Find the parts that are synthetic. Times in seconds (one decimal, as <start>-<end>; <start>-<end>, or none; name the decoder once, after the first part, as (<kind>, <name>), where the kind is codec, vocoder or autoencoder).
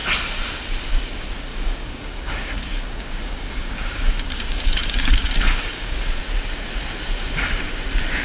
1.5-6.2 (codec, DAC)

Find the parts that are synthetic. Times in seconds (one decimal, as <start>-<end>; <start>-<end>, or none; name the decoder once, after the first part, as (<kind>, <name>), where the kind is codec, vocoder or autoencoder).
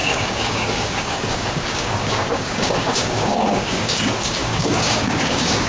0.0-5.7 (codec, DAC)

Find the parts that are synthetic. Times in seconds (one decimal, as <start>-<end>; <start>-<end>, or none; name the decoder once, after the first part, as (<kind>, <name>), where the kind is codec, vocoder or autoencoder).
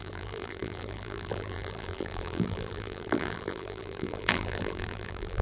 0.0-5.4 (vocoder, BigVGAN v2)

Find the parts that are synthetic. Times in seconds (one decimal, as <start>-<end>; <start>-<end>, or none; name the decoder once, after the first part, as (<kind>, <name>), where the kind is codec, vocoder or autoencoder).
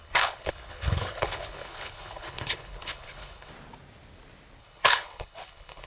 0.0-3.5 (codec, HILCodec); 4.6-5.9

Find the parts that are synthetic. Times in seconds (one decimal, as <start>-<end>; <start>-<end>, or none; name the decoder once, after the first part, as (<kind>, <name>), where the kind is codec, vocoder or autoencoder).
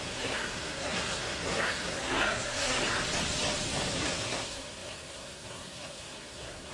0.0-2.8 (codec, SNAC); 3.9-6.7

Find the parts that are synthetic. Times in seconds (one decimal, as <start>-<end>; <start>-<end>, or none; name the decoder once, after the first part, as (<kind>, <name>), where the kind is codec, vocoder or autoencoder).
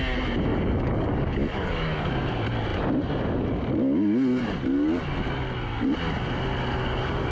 0.5-2.1 (codec, DAC)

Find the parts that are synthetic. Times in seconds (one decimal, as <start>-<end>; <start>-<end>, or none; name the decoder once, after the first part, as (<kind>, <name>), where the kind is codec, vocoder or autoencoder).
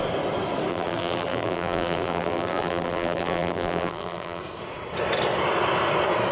0.7-4.4 (vocoder, BigVGAN v2)